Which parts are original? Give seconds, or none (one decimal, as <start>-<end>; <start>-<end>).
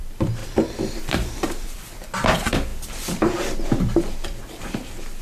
none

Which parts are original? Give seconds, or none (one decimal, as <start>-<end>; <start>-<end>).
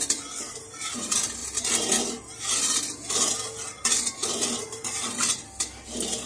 0.0-6.3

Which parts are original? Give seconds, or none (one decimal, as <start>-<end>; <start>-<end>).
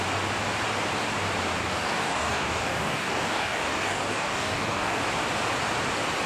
0.0-1.6; 5.0-6.3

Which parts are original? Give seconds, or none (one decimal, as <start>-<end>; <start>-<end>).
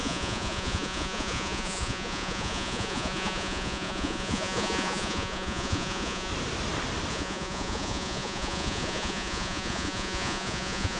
6.3-7.1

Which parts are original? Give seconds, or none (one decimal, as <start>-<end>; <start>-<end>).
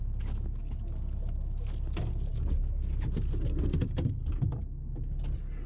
0.0-5.7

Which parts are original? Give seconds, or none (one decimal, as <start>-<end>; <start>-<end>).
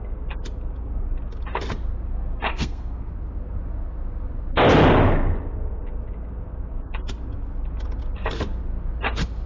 0.0-2.5; 3.1-9.5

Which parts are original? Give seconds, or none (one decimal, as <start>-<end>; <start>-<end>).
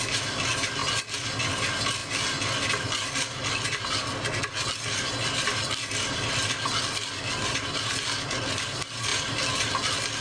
0.0-0.8; 1.5-10.2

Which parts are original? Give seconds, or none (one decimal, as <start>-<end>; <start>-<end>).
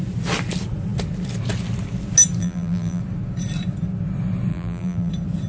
0.0-2.4; 3.0-4.5; 5.1-5.5